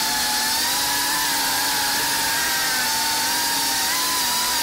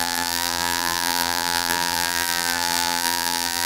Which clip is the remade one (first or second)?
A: second